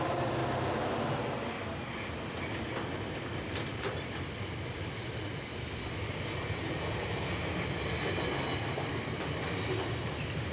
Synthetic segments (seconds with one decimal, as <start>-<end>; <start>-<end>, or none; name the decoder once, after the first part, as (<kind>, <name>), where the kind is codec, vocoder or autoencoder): none